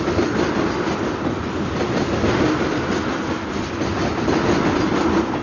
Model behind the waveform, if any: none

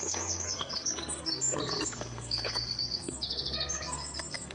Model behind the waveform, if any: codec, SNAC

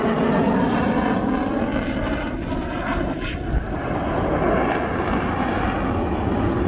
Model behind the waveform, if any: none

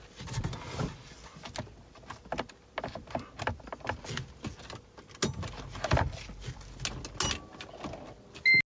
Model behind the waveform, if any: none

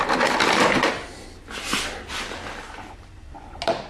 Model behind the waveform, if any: none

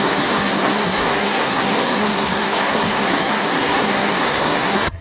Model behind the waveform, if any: codec, SNAC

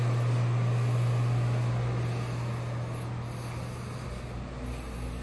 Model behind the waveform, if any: none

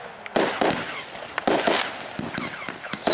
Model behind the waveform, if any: none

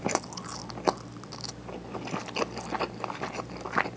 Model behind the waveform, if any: none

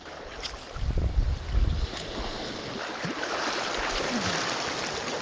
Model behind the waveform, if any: none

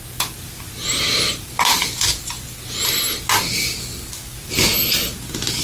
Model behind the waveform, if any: none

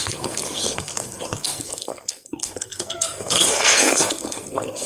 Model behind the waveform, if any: codec, SNAC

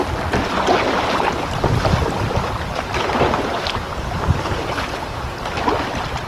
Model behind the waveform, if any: none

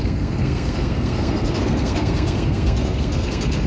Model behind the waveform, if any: codec, SNAC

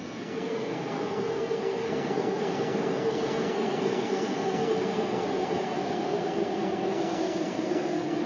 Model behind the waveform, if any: codec, SNAC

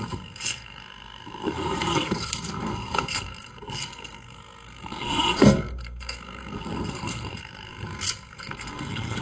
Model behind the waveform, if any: codec, SNAC